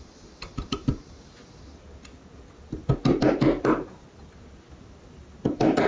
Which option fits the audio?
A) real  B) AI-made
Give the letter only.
A